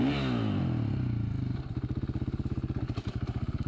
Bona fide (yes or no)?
yes